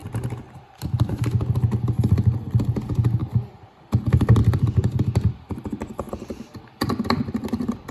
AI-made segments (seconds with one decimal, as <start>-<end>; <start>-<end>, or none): 0.0-1.1; 4.4-7.9

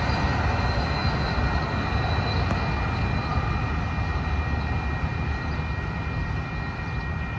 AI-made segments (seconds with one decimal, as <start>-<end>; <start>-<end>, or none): 5.1-5.6